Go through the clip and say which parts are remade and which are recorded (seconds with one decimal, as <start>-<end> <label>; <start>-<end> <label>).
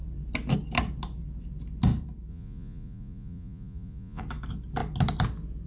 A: 0.0-2.3 recorded; 2.3-4.2 remade; 4.2-5.7 recorded